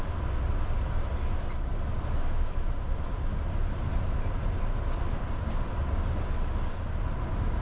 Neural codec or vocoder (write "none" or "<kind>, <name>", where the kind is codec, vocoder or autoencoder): none